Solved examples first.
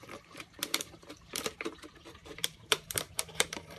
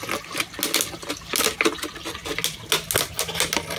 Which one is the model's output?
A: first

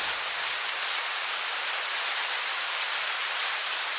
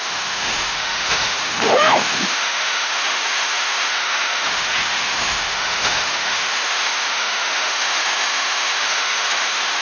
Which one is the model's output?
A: second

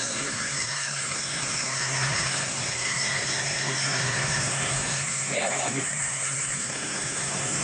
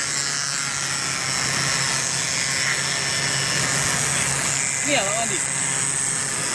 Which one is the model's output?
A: first